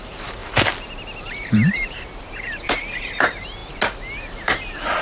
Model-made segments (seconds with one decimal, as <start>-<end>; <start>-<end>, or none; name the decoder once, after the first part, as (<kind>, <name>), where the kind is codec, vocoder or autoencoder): 0.0-0.4 (vocoder, BigVGAN v2); 1.2-3.6; 4.2-5.0